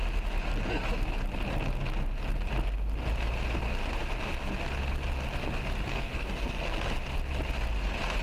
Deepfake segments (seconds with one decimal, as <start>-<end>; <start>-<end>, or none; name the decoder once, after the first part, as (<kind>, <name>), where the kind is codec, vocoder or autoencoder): 5.9-6.9 (codec, SNAC)